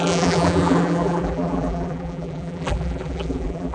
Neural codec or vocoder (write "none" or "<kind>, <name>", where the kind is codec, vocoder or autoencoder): vocoder, BigVGAN v2